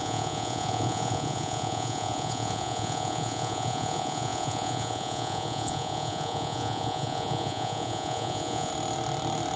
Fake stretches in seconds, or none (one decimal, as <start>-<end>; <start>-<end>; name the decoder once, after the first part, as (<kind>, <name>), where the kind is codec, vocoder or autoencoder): 0.0-8.7 (vocoder, Vocos)